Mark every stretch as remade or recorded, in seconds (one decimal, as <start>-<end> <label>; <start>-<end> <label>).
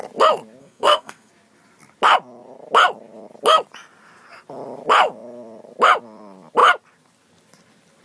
0.0-0.6 recorded; 0.6-1.3 remade; 1.3-8.0 recorded